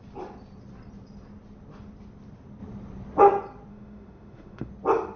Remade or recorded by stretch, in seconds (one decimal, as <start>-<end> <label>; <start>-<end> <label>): 0.0-3.7 recorded; 3.7-4.7 remade; 4.7-5.2 recorded